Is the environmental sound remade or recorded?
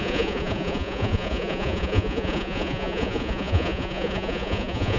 remade